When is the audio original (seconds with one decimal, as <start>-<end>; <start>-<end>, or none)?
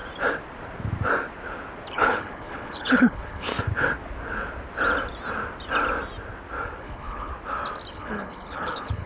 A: 0.0-1.9; 3.5-6.8; 7.3-7.9